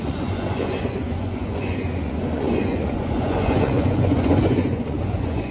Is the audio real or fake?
fake